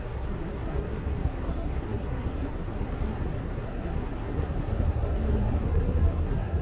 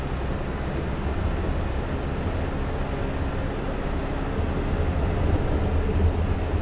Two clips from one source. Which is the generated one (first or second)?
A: first